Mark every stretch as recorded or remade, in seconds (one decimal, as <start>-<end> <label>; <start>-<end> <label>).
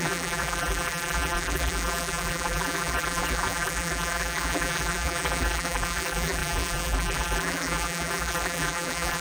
0.0-9.2 remade